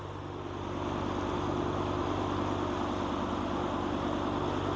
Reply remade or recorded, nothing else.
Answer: recorded